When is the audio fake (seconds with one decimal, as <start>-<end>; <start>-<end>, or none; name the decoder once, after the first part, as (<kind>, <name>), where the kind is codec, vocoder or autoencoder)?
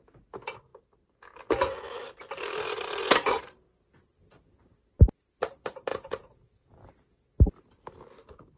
5.9-6.9 (vocoder, Vocos)